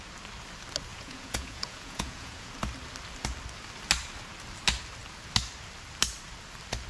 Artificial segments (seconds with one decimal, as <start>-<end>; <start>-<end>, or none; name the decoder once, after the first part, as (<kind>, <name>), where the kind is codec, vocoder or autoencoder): 0.9-2.5 (vocoder, Vocos)